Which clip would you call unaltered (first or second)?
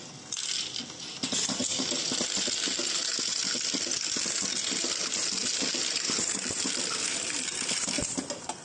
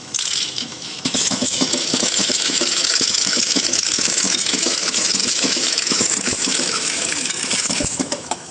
first